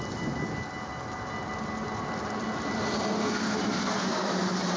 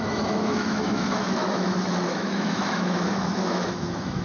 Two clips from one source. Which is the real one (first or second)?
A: first